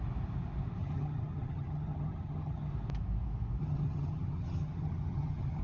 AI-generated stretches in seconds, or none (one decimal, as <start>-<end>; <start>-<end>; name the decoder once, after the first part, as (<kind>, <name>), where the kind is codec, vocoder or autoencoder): 0.8-2.7 (vocoder, HiFi-GAN); 3.6-5.6